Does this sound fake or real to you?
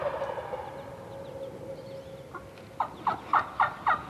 real